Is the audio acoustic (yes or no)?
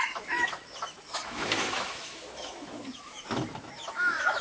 no